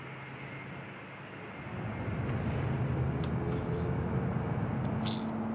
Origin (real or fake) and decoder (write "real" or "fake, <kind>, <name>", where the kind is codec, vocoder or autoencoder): real